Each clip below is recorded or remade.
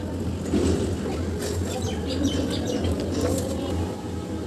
recorded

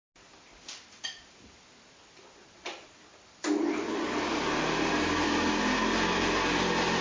recorded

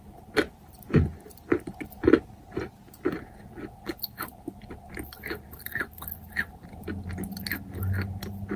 recorded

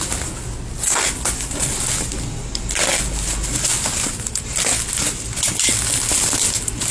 recorded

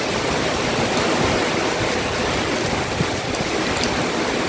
recorded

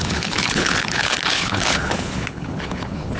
remade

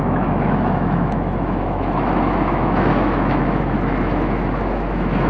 remade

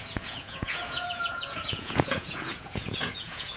remade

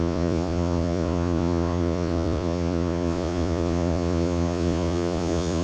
remade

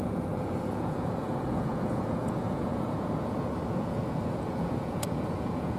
remade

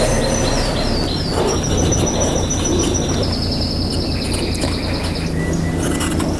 recorded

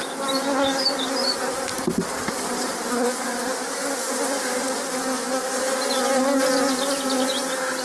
recorded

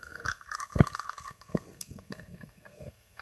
remade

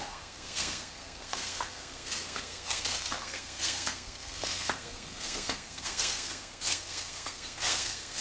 remade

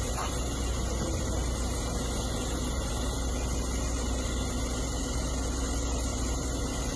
recorded